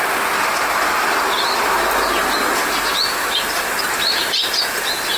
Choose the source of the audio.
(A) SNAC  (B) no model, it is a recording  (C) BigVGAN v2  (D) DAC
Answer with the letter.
B